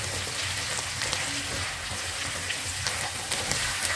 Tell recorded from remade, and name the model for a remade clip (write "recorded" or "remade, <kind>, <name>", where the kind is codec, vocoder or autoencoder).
recorded